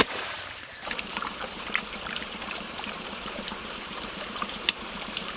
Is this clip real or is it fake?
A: fake